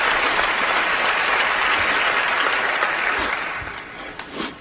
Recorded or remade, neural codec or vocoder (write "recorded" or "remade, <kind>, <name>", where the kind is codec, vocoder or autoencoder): recorded